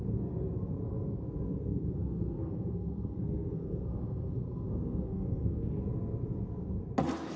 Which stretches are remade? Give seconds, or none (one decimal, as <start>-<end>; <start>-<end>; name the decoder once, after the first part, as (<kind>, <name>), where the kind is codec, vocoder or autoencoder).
1.7-5.7 (codec, SNAC)